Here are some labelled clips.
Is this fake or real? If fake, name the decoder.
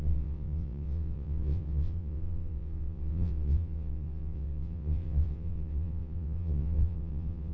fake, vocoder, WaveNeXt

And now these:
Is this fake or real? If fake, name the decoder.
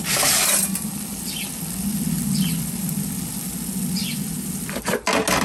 real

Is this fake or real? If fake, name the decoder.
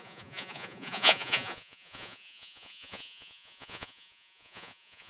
fake, vocoder, Vocos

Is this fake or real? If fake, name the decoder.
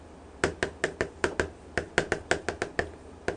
real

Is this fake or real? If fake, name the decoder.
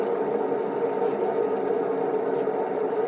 real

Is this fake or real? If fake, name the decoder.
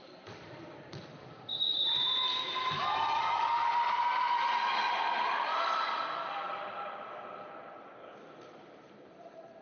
fake, vocoder, BigVGAN v2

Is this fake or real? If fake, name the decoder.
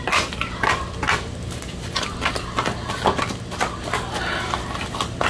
real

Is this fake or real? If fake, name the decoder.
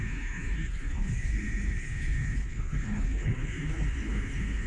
fake, codec, HILCodec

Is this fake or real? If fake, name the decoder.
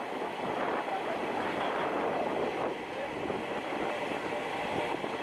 real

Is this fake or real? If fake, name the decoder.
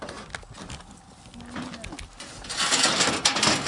real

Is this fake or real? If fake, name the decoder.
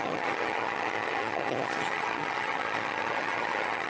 fake, vocoder, HiFi-GAN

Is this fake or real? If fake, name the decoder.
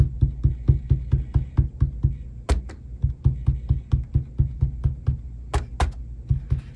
real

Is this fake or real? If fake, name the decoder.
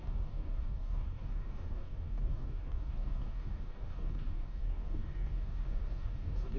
fake, codec, DAC